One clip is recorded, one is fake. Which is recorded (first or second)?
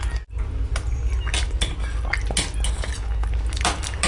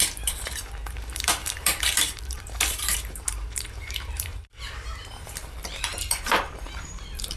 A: first